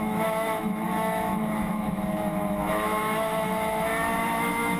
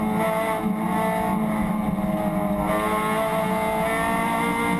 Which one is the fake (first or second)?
first